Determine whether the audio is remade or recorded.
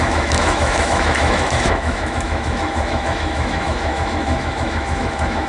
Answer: remade